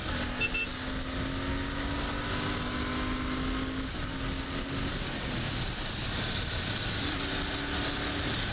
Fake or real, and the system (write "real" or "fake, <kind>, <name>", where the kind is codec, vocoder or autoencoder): real